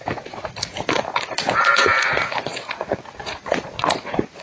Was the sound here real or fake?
fake